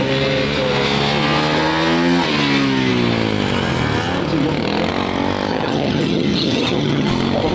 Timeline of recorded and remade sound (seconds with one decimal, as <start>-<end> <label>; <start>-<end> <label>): 0.0-5.5 recorded; 5.5-7.1 remade; 7.1-7.5 recorded